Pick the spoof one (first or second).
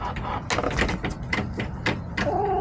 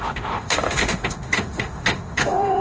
second